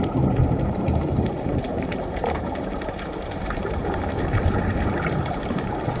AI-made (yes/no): yes